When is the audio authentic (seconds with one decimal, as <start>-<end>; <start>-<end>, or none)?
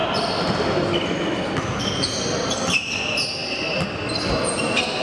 3.0-5.0